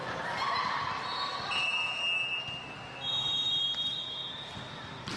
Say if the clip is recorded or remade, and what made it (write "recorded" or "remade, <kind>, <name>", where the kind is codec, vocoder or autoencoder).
recorded